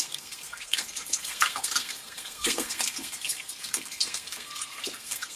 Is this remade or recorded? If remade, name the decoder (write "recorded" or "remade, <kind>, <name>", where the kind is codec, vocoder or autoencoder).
remade, codec, SNAC